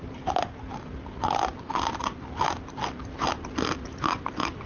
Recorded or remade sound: recorded